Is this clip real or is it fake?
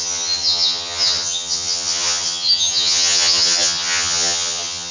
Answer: fake